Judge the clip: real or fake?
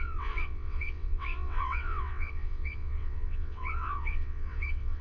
fake